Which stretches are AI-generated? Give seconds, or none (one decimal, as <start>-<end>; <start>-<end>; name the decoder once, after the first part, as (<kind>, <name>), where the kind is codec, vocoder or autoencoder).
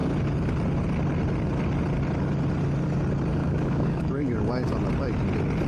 3.4-4.4 (codec, DAC)